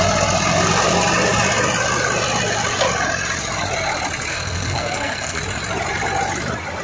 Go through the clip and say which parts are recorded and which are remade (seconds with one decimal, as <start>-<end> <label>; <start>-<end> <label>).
0.0-4.3 recorded; 4.3-5.4 remade; 5.4-6.8 recorded